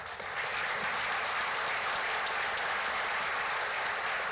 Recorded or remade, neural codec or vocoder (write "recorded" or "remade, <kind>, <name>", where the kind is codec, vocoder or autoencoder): recorded